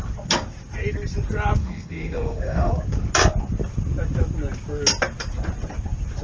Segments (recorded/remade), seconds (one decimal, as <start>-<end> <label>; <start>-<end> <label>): 0.0-1.6 recorded; 1.6-2.7 remade; 2.7-6.2 recorded